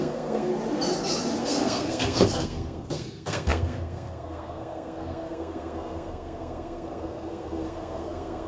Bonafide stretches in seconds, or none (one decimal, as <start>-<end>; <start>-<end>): 0.5-1.4